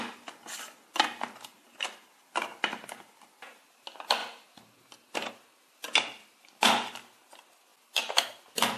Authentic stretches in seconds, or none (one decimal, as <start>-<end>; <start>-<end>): 0.0-4.2; 5.3-7.7; 8.3-8.8